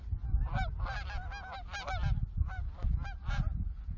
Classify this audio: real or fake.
real